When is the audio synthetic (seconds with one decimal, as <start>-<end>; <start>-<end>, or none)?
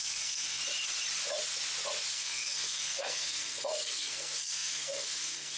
0.0-0.6; 2.1-5.6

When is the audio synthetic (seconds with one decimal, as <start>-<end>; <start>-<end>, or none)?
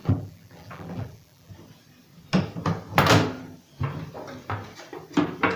0.0-1.5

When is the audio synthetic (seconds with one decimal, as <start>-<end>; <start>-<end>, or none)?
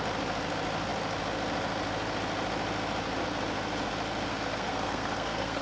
4.3-5.6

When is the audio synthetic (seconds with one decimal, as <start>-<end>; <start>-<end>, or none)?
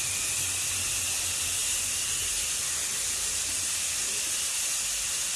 none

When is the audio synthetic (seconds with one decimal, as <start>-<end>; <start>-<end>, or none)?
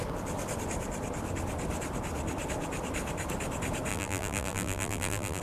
3.9-5.4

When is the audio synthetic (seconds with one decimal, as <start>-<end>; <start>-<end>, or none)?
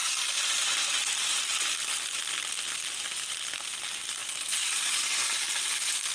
4.2-6.1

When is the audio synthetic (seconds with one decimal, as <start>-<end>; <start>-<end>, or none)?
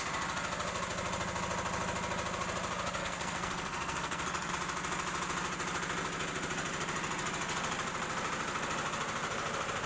3.0-4.5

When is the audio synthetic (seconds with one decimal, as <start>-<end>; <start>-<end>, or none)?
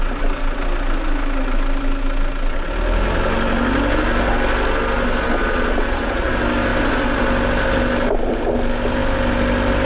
5.4-6.3